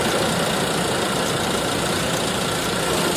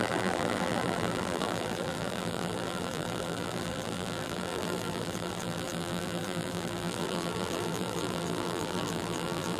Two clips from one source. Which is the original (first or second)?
first